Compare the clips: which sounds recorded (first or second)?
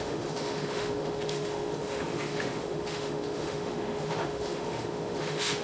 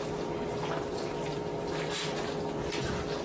second